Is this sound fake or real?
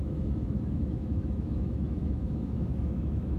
fake